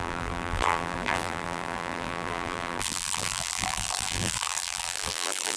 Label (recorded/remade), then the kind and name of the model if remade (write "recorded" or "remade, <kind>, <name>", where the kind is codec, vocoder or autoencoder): remade, vocoder, BigVGAN v2